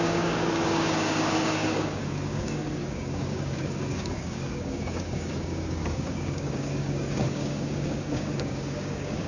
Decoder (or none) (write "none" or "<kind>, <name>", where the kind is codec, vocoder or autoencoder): codec, DAC